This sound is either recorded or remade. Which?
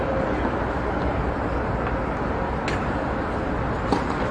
recorded